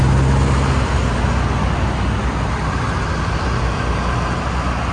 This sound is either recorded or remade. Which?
recorded